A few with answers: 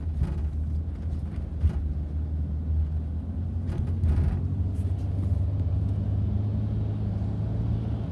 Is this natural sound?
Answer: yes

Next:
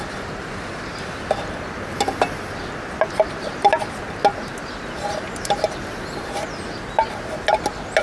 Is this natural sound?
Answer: yes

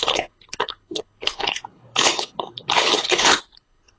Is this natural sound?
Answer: no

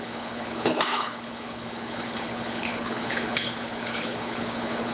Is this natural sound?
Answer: no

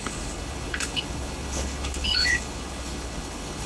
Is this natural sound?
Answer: no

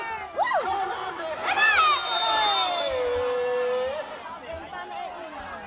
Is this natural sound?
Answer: yes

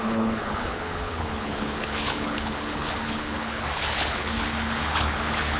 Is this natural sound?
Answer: no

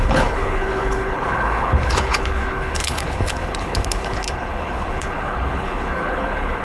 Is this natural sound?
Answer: no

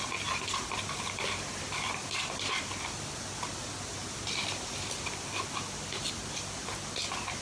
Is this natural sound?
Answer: yes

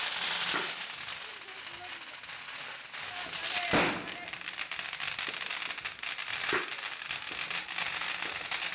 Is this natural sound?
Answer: yes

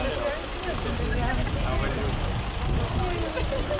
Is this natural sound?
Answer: yes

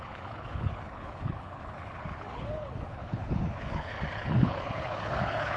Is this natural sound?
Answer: no